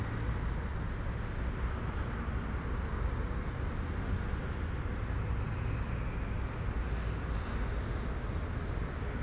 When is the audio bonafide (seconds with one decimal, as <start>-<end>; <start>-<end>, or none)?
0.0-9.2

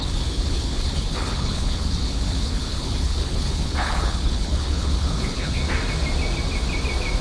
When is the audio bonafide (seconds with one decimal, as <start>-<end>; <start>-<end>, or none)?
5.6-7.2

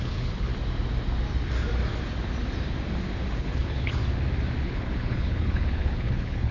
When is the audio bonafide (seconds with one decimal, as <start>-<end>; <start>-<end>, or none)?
0.5-3.4; 4.0-4.6

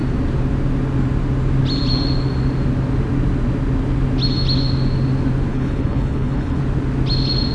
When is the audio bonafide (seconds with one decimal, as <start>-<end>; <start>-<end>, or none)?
0.0-5.5; 6.6-7.5

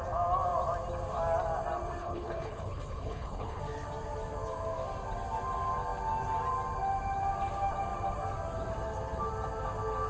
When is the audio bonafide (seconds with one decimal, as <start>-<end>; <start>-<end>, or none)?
0.0-2.0; 3.6-10.1